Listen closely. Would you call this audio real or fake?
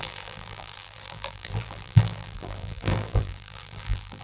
fake